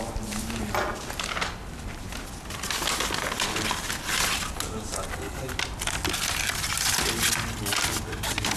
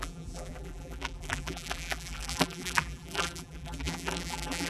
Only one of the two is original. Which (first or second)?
first